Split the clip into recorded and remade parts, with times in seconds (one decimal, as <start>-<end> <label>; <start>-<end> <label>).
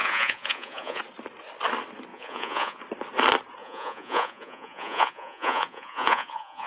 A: 0.0-1.0 remade; 1.0-2.1 recorded; 2.1-2.8 remade; 2.8-3.6 recorded; 3.6-6.7 remade